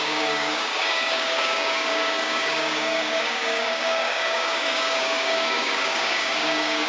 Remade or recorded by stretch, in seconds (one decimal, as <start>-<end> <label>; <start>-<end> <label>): 0.0-6.9 remade

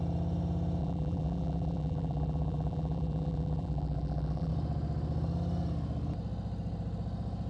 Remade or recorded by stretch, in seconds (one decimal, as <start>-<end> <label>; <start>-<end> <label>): 0.0-0.8 recorded; 0.8-4.5 remade; 4.5-7.5 recorded

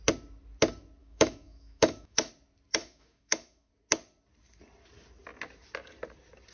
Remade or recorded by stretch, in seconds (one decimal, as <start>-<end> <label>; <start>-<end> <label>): 0.0-1.0 recorded; 1.0-2.3 remade; 2.3-2.8 recorded; 2.8-3.7 remade; 3.7-6.5 recorded

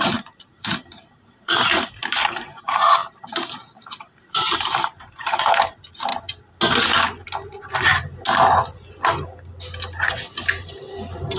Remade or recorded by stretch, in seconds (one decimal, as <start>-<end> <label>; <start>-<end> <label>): 0.0-6.1 remade; 6.1-10.6 recorded; 10.6-11.4 remade

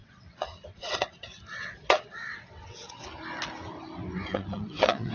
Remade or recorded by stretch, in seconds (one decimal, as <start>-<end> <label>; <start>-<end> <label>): 0.0-3.1 remade; 3.1-4.3 recorded; 4.3-5.1 remade

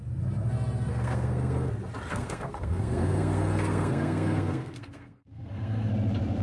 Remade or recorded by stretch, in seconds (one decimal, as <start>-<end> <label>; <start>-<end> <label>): 0.0-0.9 recorded; 0.9-1.7 remade; 1.7-2.1 recorded; 2.1-5.9 remade; 5.9-6.4 recorded

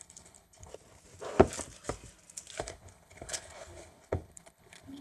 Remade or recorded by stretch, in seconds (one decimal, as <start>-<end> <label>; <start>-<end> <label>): 0.0-0.7 remade; 0.7-2.6 recorded; 2.6-5.0 remade